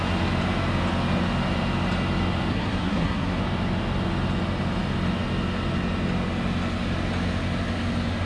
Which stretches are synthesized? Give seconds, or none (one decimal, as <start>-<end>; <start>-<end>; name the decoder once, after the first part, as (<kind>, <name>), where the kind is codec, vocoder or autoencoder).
2.5-3.4 (codec, SNAC)